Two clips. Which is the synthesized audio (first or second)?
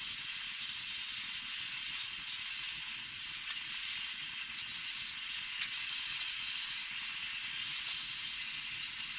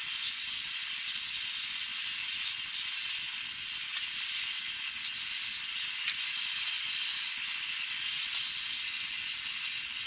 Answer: first